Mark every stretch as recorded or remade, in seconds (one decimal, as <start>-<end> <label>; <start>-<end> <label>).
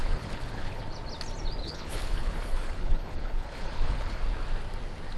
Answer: 0.0-0.8 remade; 0.8-1.6 recorded; 1.6-4.2 remade; 4.2-5.2 recorded